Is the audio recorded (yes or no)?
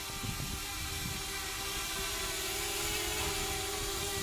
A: yes